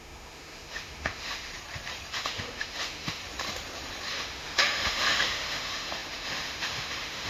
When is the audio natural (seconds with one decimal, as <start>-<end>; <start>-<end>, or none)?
1.5-2.1; 3.2-4.1